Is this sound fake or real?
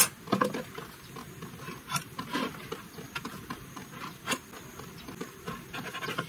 real